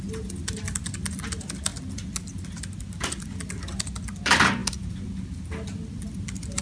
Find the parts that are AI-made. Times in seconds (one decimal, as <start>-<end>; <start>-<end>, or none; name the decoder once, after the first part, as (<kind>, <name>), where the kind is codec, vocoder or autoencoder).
none